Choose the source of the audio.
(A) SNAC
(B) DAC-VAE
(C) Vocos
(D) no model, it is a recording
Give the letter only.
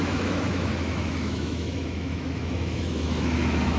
B